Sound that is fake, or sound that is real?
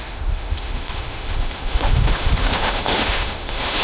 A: fake